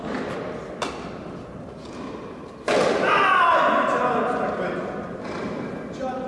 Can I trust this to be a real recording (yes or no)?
yes